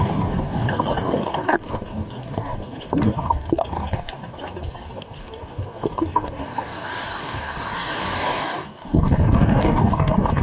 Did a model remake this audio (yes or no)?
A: yes